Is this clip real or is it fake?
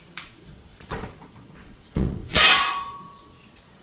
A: fake